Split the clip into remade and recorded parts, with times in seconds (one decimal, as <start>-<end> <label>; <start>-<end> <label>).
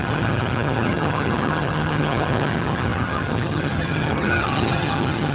0.0-5.3 remade